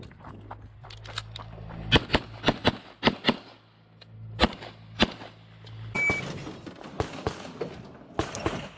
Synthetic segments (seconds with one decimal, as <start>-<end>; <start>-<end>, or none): none